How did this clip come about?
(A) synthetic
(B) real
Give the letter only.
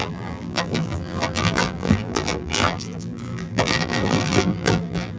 A